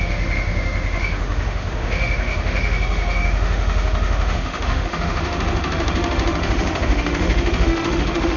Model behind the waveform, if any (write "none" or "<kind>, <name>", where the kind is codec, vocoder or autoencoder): autoencoder, DAC-VAE